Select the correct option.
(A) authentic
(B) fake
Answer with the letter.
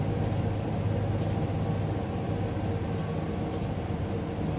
A